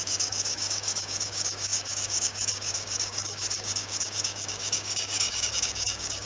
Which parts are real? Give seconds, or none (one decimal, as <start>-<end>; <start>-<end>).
none